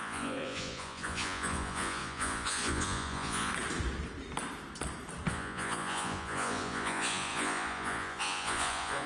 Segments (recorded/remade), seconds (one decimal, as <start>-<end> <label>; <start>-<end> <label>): 0.0-3.5 remade; 3.5-5.3 recorded; 5.3-9.1 remade